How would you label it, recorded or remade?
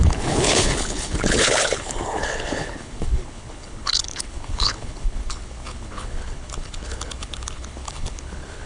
remade